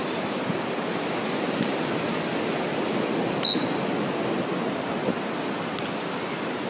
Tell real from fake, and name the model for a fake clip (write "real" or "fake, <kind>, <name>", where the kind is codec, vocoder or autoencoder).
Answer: real